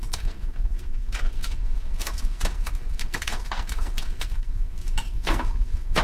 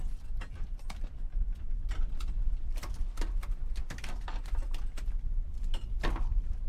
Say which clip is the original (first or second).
second